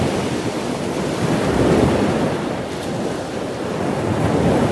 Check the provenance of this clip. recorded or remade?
recorded